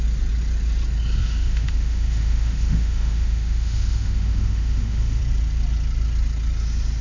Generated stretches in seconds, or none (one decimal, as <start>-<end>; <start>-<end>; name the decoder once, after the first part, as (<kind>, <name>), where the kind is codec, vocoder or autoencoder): 1.2-5.2 (autoencoder, DAC-VAE)